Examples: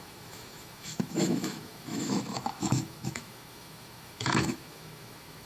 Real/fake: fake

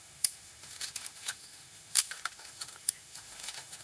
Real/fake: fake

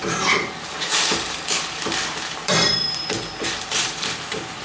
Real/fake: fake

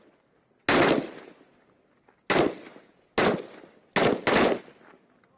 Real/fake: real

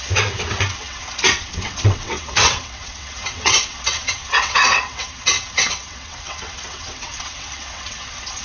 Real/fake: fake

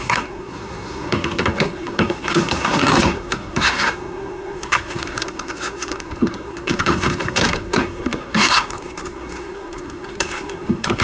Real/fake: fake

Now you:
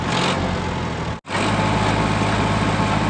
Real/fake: real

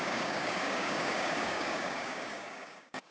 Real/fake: fake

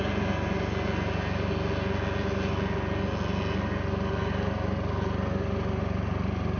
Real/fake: real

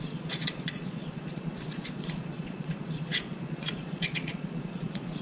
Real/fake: fake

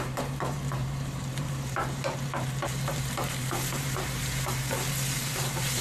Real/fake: fake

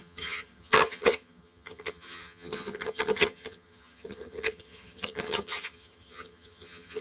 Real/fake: fake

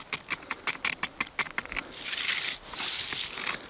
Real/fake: real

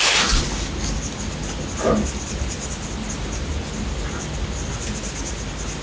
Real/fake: real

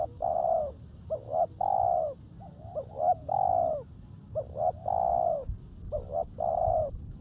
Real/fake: real